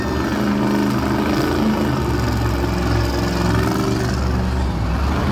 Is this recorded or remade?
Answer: recorded